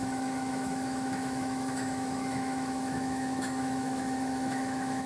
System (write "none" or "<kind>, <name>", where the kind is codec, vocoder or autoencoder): autoencoder, DAC-VAE